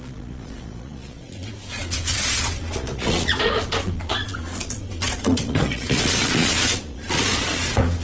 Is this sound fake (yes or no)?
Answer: yes